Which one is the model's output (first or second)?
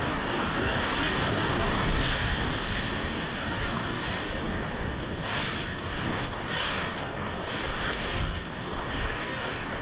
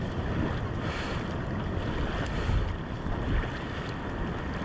first